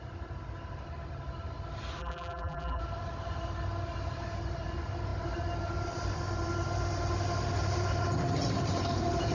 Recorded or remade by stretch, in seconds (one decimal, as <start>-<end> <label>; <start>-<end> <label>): 0.0-2.0 recorded; 2.0-2.8 remade; 2.8-9.3 recorded